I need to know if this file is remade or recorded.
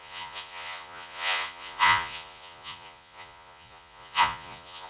remade